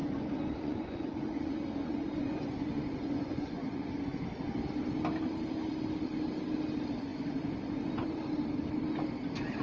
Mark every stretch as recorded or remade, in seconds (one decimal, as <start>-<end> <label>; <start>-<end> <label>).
0.0-3.9 remade; 3.9-7.1 recorded; 7.1-7.9 remade; 7.9-9.6 recorded